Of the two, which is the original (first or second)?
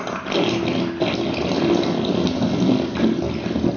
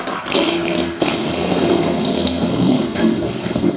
first